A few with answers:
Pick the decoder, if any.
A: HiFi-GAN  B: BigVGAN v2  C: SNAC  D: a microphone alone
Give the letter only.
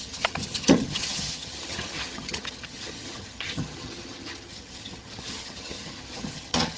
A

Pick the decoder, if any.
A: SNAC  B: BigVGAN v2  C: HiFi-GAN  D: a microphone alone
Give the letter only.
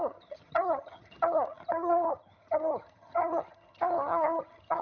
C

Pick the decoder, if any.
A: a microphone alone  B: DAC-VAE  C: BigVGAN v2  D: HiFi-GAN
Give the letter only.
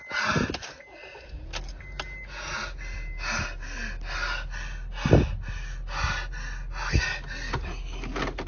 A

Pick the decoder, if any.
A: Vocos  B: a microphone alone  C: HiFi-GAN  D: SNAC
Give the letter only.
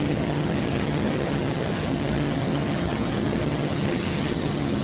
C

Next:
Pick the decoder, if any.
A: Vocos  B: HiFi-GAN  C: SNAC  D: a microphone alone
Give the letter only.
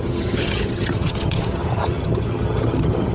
B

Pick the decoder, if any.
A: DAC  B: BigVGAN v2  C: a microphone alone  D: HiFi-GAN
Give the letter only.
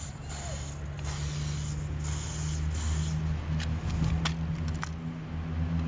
C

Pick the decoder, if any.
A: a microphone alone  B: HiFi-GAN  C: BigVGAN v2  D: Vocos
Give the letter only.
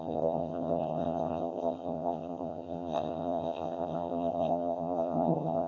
B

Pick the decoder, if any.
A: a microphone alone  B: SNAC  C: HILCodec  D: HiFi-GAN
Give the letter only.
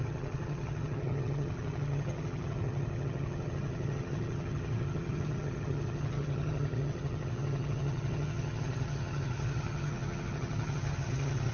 D